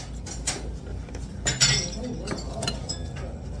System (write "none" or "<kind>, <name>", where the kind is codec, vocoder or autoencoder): none